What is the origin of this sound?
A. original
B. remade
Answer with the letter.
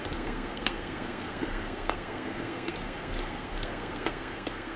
B